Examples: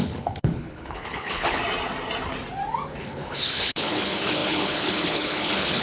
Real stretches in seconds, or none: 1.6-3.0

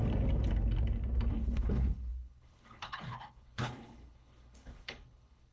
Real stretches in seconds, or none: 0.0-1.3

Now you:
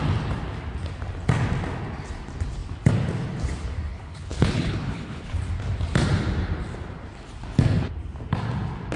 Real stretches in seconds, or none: 0.0-3.9; 5.4-9.0

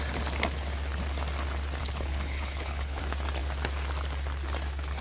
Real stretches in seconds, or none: 0.0-1.8; 3.0-5.0